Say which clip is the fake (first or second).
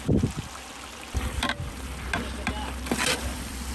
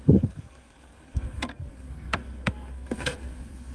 second